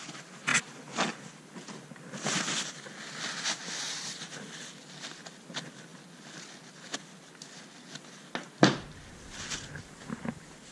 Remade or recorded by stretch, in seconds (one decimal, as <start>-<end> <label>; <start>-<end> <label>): 0.0-10.7 recorded